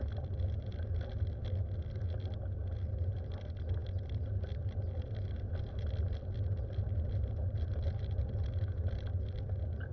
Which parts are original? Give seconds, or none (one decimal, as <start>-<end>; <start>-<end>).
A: 0.0-9.9